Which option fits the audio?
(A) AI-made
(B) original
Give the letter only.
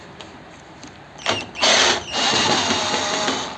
B